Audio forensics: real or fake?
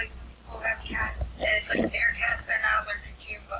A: real